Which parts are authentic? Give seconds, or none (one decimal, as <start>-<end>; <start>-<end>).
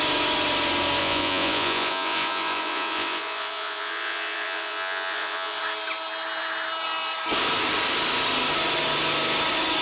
0.0-1.0; 5.6-9.8